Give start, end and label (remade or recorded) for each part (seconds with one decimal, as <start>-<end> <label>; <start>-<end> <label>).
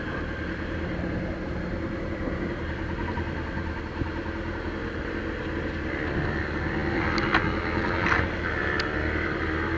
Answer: 0.0-9.8 recorded